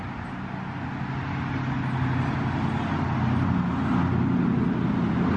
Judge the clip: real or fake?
real